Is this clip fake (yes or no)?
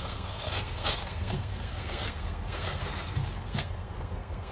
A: yes